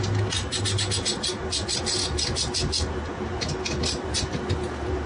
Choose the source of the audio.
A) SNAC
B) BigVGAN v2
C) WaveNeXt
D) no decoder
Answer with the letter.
D